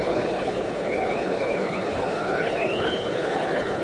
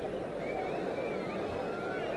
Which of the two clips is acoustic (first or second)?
second